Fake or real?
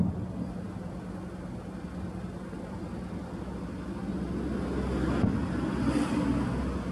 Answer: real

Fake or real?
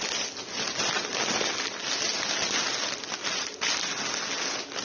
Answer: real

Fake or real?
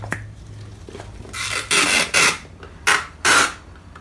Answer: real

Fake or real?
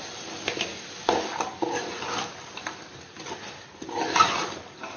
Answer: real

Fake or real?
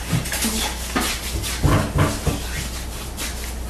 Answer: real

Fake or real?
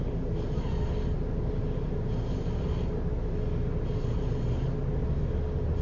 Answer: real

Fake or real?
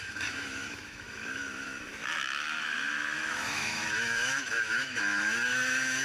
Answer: fake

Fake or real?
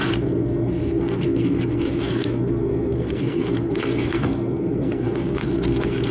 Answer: fake